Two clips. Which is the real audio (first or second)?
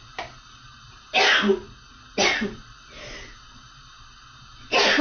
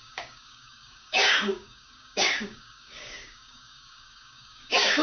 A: first